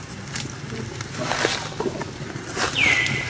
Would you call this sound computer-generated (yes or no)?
no